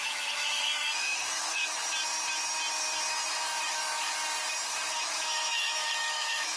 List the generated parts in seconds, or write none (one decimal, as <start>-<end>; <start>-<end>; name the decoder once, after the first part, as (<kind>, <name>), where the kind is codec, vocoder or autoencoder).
0.0-1.8 (autoencoder, DAC-VAE); 3.7-4.2; 5.0-6.6